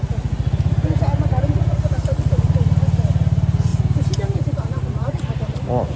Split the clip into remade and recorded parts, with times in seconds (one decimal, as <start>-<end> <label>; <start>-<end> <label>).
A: 0.0-3.7 recorded; 3.7-5.2 remade; 5.2-6.0 recorded